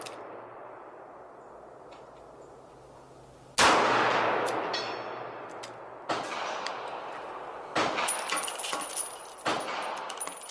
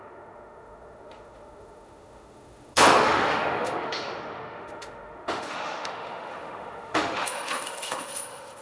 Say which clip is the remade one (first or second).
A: second